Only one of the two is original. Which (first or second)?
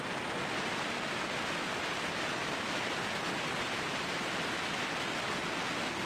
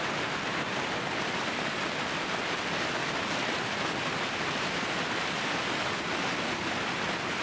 first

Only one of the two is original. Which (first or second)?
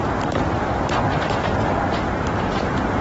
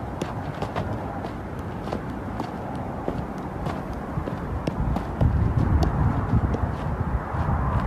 second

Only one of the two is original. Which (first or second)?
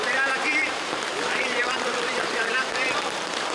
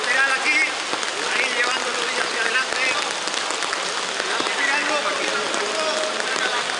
second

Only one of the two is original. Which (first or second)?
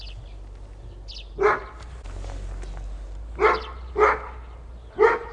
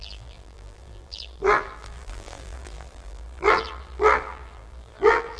first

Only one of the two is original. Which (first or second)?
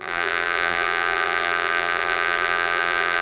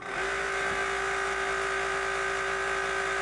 second